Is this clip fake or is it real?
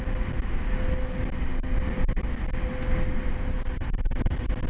real